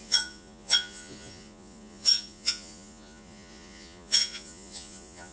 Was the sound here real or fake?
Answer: fake